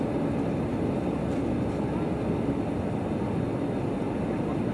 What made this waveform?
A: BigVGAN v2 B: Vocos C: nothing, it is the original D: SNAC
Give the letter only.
C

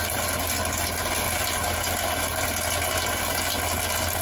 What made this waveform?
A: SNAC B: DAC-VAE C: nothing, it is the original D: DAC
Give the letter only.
C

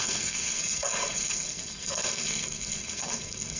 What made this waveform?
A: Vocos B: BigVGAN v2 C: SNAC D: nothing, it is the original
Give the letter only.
C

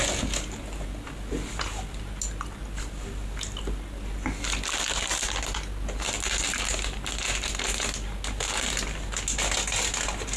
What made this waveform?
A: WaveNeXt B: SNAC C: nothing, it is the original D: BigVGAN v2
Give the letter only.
C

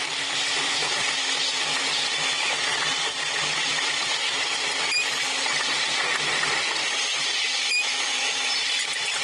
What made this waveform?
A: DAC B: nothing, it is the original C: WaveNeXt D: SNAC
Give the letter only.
B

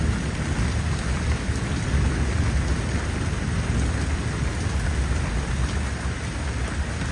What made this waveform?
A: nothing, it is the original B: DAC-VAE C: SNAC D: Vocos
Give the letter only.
A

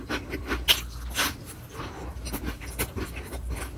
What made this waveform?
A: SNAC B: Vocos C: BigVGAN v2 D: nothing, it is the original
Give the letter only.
D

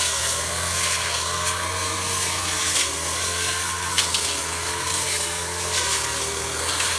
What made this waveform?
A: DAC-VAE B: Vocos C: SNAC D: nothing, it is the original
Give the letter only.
C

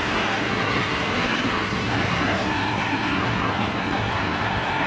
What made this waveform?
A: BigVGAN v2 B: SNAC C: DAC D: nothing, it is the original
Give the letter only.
B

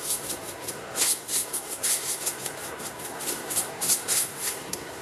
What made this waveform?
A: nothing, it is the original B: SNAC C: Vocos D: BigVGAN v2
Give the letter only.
B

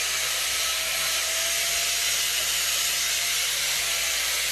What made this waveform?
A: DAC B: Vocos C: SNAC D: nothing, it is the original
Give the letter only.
D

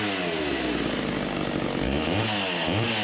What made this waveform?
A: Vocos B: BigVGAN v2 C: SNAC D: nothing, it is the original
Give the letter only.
D